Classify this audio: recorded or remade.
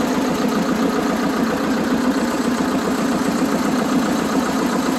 recorded